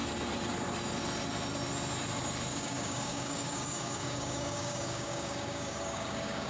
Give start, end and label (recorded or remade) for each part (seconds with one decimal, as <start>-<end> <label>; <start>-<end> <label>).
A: 0.0-2.5 recorded; 2.5-6.5 remade